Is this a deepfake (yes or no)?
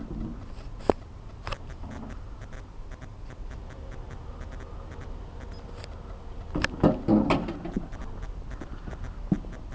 no